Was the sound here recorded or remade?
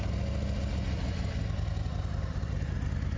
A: recorded